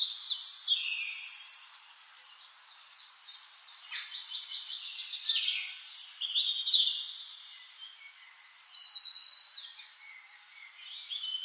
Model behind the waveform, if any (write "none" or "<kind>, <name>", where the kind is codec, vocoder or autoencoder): vocoder, BigVGAN v2